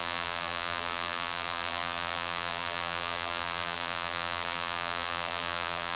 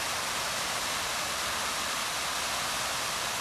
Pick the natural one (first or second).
second